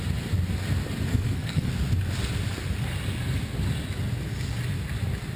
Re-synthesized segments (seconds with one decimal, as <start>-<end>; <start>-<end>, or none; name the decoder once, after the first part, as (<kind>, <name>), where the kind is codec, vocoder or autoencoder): 1.1-1.7 (codec, SNAC)